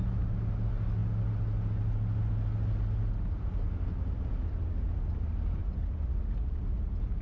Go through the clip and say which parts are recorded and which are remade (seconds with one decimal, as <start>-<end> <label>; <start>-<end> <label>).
0.0-7.2 recorded